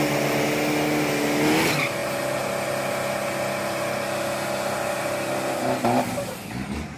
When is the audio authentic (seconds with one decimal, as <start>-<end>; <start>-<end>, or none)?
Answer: 0.0-7.0